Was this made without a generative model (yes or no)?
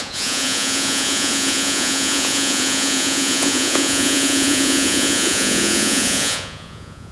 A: no